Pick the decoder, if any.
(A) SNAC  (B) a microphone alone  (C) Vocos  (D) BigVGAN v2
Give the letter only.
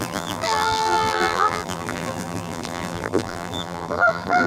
D